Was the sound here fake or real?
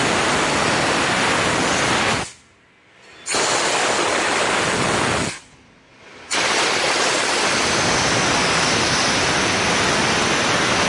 real